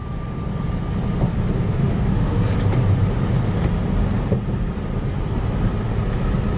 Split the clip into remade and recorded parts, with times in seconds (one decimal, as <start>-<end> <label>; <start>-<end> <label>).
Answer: 0.0-1.8 recorded; 1.8-2.4 remade; 2.4-6.6 recorded